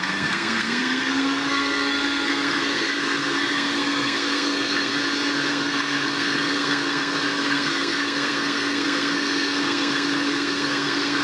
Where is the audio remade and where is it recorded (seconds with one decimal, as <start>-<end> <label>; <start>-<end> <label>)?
0.0-4.9 remade; 4.9-5.5 recorded; 5.5-11.2 remade